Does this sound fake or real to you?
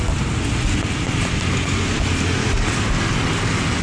real